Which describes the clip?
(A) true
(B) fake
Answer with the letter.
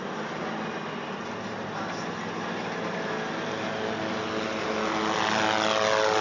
A